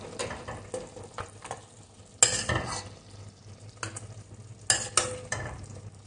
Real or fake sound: real